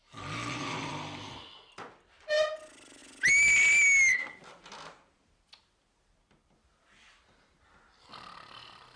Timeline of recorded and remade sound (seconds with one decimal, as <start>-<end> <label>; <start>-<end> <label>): 0.0-9.0 recorded